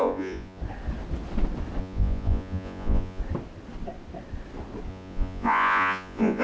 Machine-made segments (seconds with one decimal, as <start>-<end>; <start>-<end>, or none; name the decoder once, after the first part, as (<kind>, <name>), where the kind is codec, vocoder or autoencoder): 0.0-0.6 (vocoder, Vocos); 1.8-3.2; 4.9-6.4